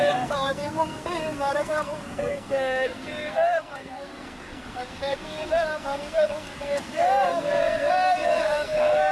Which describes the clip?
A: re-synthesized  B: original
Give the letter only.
A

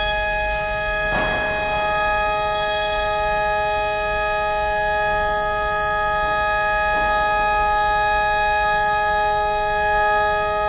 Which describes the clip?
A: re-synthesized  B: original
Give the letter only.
B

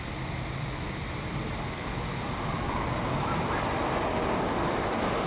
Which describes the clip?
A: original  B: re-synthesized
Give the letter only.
A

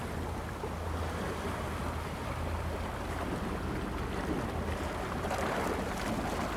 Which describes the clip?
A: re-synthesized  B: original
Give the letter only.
B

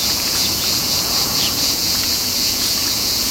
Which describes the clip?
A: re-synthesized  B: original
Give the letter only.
A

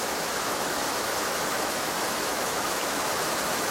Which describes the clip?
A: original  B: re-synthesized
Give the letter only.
B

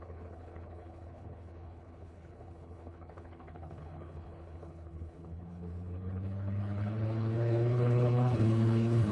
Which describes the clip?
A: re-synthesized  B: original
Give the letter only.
A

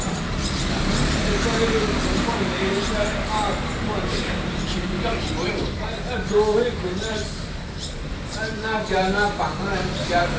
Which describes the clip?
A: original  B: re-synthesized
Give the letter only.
B